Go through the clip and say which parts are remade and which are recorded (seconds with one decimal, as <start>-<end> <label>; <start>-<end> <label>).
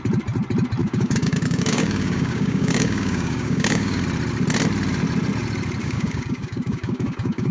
0.0-0.8 recorded; 0.8-4.0 remade; 4.0-5.8 recorded; 5.8-7.5 remade